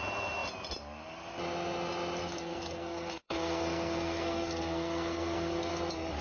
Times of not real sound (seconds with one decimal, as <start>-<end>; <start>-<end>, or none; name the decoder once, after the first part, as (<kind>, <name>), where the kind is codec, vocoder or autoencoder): 2.2-5.7 (codec, SNAC)